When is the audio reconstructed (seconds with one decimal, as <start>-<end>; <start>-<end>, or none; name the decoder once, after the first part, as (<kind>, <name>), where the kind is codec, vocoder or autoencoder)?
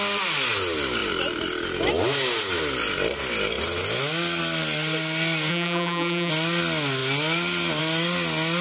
5.5-6.3 (vocoder, BigVGAN v2)